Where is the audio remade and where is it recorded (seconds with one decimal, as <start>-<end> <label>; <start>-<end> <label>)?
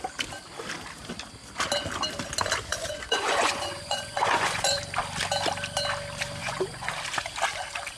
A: 0.0-2.7 recorded; 2.7-4.8 remade; 4.8-6.4 recorded; 6.4-6.9 remade; 6.9-8.0 recorded